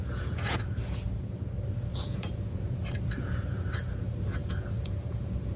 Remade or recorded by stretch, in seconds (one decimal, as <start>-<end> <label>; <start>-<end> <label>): 0.0-1.4 remade; 1.4-1.9 recorded; 1.9-3.7 remade; 3.7-4.4 recorded; 4.4-5.6 remade